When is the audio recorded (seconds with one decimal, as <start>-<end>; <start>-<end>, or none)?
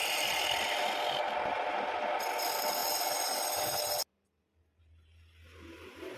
0.0-6.2